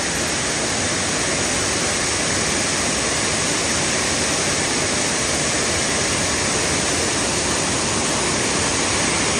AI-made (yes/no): no